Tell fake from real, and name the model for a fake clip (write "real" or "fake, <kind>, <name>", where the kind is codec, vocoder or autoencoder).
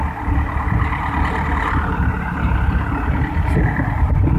real